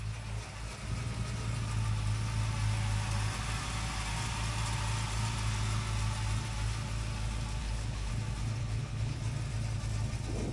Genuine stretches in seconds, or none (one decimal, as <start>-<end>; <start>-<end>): 0.0-7.6; 8.1-8.6; 9.2-10.5